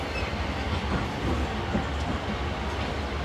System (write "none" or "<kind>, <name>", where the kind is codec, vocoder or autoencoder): none